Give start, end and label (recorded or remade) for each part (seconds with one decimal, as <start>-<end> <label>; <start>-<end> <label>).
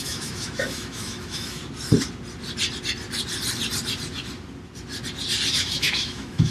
0.0-1.6 remade; 1.6-5.5 recorded; 5.5-6.5 remade